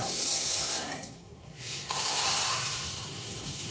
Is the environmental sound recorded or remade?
remade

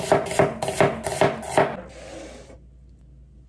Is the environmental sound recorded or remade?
recorded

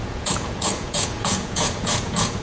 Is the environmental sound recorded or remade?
remade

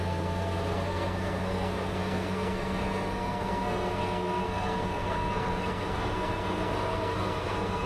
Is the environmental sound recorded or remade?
remade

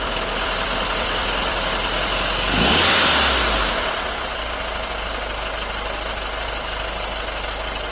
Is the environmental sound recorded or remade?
recorded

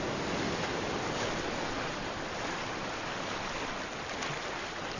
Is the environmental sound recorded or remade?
recorded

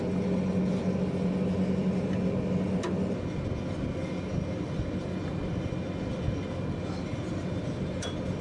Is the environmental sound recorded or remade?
recorded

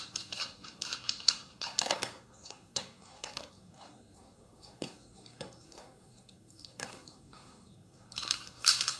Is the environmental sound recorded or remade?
remade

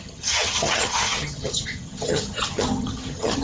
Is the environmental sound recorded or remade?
remade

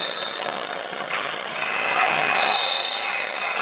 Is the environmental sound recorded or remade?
remade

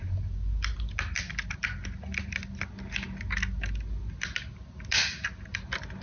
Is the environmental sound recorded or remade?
recorded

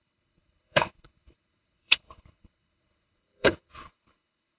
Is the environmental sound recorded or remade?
remade